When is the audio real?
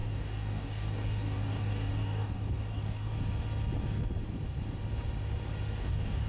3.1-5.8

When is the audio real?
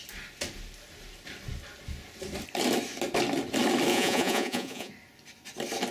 0.0-3.9; 4.9-5.9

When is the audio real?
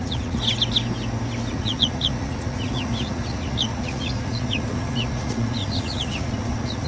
0.4-1.5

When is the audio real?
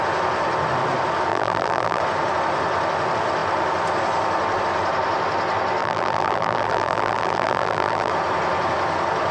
0.0-1.3; 2.0-5.8; 8.1-9.3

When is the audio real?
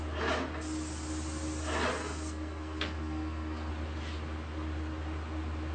0.0-2.0; 3.7-5.7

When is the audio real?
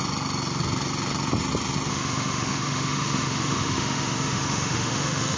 0.0-1.9